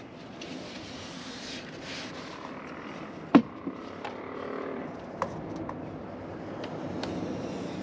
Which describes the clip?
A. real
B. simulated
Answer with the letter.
A